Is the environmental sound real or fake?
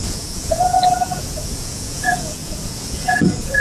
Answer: fake